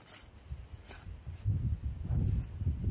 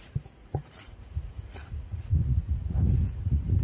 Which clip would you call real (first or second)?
first